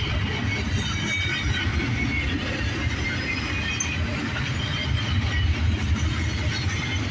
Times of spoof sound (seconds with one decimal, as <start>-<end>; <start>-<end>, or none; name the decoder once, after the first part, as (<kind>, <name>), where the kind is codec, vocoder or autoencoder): none